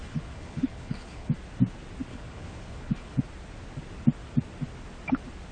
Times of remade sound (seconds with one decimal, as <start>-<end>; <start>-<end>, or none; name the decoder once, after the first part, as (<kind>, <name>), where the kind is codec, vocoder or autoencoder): 0.0-1.3 (codec, HILCodec); 2.1-3.2